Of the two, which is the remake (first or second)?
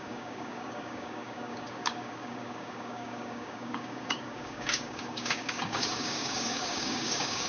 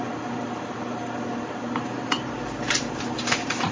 first